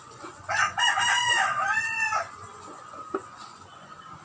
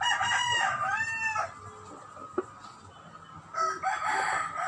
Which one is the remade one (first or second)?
first